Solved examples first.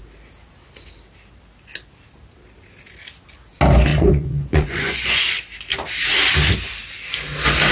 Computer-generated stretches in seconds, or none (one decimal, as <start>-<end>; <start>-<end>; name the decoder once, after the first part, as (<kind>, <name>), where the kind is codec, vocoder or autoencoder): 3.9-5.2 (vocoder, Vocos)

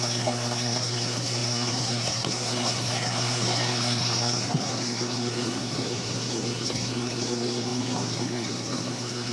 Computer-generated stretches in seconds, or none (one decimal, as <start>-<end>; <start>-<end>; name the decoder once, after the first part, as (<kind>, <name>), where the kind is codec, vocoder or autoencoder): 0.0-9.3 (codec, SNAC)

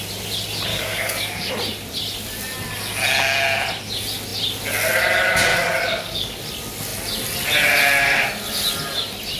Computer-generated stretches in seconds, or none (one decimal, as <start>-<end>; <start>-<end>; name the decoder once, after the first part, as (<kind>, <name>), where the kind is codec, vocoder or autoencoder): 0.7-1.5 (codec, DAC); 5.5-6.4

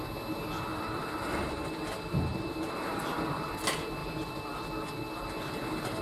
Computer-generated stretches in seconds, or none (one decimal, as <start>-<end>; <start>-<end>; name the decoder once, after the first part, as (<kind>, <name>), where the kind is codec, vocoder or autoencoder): 0.7-3.5 (vocoder, BigVGAN v2); 4.0-4.9

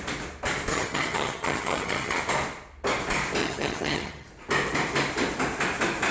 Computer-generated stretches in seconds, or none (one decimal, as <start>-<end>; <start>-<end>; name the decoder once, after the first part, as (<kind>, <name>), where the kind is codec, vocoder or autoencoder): 0.7-2.2 (vocoder, HiFi-GAN); 3.4-4.3

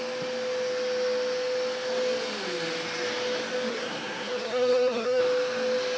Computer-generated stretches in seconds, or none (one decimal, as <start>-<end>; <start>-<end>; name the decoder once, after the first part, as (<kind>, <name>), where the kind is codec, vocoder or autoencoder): 3.7-5.2 (codec, SNAC)